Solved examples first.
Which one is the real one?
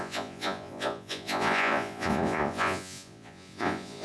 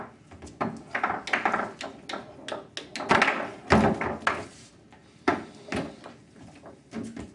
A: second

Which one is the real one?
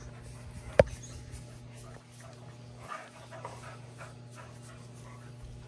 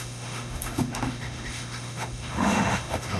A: first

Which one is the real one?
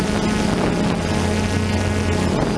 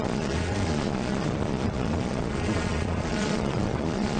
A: first